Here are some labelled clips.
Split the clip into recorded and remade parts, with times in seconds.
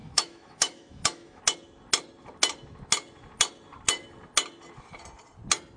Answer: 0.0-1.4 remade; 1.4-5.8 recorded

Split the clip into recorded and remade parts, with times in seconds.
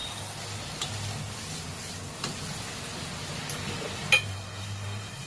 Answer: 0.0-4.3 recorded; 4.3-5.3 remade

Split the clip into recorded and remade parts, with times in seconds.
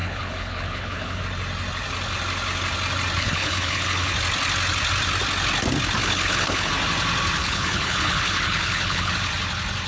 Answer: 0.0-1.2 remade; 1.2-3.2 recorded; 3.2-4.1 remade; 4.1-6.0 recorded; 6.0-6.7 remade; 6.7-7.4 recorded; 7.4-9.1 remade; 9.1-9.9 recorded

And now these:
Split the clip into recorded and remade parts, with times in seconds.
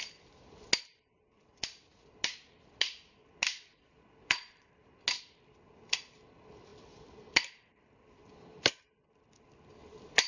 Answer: 0.0-3.7 recorded; 3.7-4.7 remade; 4.7-10.3 recorded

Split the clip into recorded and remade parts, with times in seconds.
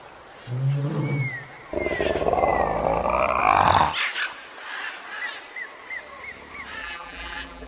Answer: 0.0-6.8 recorded; 6.8-7.7 remade